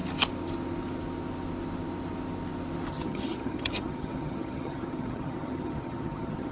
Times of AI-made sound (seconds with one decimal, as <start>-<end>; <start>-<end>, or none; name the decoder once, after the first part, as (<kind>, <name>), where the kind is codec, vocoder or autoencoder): 2.9-6.5 (vocoder, HiFi-GAN)